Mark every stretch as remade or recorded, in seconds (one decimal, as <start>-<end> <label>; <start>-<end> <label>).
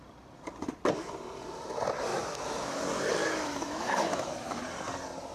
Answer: 0.0-2.1 recorded; 2.1-2.8 remade; 2.8-3.2 recorded; 3.2-4.6 remade; 4.6-5.3 recorded